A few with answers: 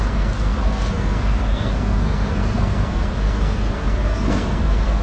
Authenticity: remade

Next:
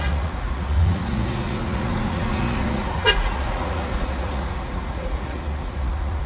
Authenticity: remade